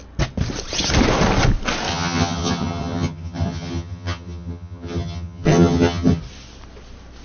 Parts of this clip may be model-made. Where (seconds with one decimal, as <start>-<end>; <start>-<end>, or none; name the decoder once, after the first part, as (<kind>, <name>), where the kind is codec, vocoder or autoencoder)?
1.9-6.2 (vocoder, HiFi-GAN)